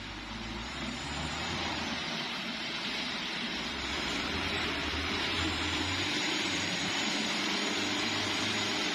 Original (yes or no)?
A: no